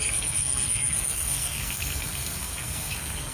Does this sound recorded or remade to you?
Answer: remade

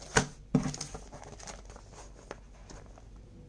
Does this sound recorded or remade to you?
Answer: recorded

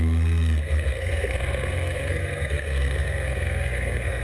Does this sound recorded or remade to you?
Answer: remade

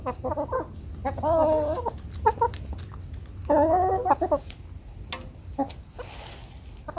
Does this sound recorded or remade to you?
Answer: recorded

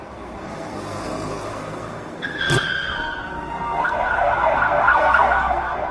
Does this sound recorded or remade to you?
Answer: remade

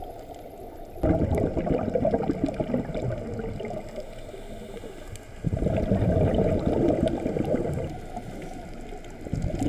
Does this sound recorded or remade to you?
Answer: recorded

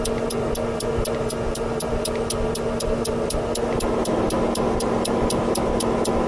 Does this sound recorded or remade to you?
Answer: recorded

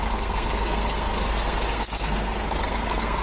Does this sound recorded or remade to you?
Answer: remade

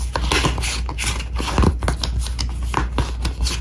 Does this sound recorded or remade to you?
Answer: recorded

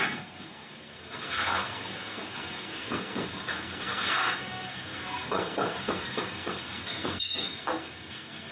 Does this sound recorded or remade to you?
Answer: remade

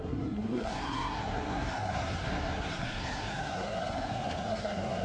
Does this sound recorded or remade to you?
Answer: remade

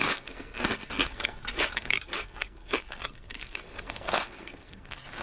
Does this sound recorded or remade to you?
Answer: remade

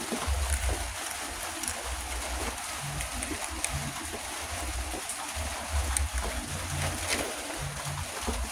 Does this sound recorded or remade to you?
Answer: recorded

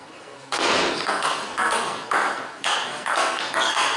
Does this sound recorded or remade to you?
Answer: remade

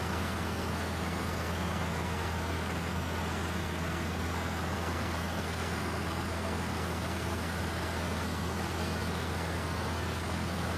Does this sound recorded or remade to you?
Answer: remade